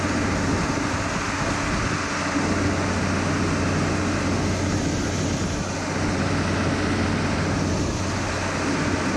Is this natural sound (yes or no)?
yes